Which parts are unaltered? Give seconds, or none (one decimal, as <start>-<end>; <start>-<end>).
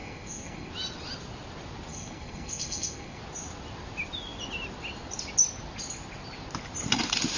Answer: 0.7-1.9; 3.2-7.4